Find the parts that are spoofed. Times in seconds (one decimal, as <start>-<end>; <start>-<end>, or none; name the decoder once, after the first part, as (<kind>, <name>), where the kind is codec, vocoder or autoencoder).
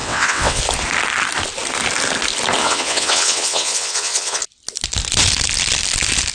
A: 0.0-0.6 (vocoder, WaveNeXt); 2.6-4.4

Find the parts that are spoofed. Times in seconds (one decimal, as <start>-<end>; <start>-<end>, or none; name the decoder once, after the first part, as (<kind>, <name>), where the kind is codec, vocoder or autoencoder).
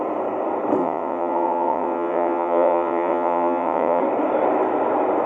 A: 0.8-4.0 (vocoder, WaveNeXt)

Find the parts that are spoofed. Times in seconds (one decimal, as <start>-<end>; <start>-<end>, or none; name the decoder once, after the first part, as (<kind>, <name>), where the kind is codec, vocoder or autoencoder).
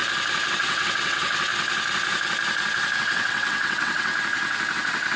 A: 0.5-1.5 (vocoder, WaveNeXt); 3.0-4.1; 4.7-5.2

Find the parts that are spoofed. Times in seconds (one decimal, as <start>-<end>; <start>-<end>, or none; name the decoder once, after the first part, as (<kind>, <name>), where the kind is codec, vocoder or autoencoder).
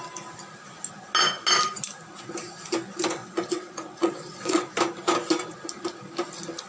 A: 3.2-4.7 (vocoder, WaveNeXt)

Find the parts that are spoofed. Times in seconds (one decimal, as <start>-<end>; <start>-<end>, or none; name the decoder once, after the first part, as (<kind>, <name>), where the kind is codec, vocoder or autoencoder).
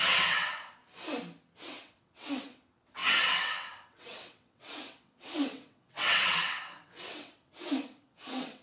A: 0.0-0.8 (vocoder, WaveNeXt); 1.6-8.6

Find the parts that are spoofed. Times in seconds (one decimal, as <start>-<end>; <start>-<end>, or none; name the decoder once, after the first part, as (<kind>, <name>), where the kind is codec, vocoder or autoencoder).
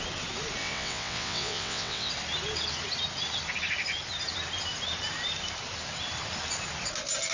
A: 0.6-2.1 (vocoder, WaveNeXt)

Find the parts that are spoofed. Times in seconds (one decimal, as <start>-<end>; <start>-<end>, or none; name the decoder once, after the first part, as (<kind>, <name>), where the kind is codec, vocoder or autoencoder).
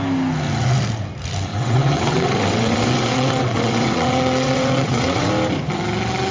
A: 1.5-5.3 (vocoder, WaveNeXt)